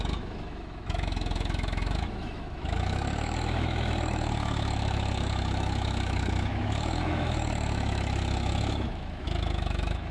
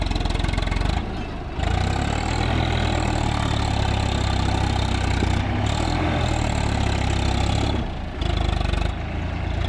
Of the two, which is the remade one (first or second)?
first